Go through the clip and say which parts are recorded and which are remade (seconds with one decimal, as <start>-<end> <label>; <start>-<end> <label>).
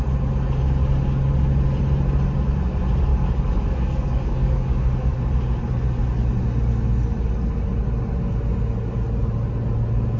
0.0-3.1 recorded; 3.1-5.2 remade; 5.2-10.2 recorded